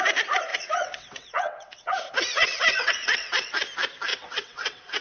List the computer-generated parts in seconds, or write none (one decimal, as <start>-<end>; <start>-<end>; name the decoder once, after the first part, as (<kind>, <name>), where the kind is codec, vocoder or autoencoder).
0.5-3.5 (vocoder, WaveNeXt); 4.1-5.0